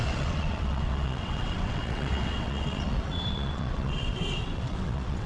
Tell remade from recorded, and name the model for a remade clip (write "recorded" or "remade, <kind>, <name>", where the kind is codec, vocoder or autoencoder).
remade, vocoder, WaveNeXt